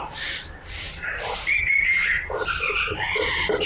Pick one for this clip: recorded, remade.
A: remade